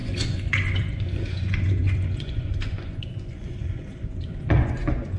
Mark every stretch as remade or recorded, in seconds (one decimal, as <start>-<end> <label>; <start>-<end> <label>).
0.0-5.2 remade